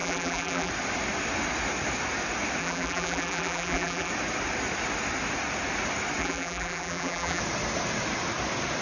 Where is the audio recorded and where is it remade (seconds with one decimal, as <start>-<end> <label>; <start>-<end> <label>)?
0.0-0.7 remade; 0.7-2.6 recorded; 2.6-4.1 remade; 4.1-6.2 recorded; 6.2-7.4 remade; 7.4-8.8 recorded